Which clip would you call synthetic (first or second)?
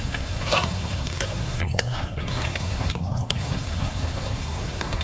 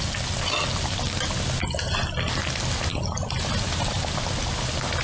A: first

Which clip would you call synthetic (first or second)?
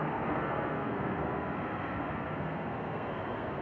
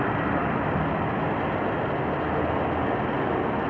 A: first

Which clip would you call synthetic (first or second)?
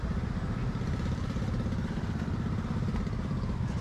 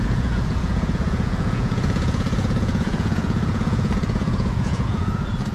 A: second